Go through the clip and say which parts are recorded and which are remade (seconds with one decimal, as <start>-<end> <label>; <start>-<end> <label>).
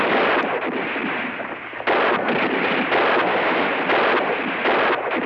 0.0-5.3 recorded